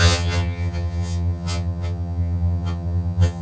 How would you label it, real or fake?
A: fake